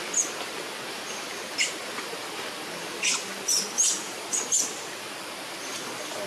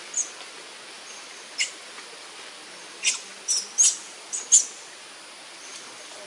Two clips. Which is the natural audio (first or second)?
second